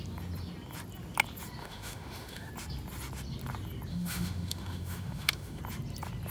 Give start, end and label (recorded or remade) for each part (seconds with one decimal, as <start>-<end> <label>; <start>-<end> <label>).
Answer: 0.0-1.6 recorded; 1.6-2.5 remade; 2.5-3.9 recorded; 3.9-5.6 remade; 5.6-6.3 recorded